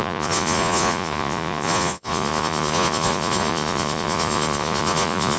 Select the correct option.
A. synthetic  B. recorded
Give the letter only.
A